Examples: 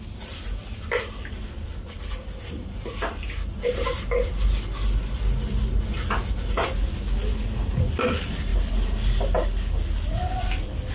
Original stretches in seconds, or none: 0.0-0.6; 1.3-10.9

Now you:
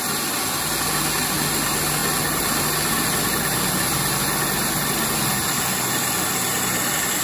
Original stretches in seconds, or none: 0.0-7.2

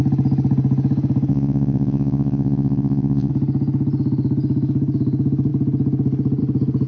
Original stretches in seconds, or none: 0.0-1.3; 3.3-6.9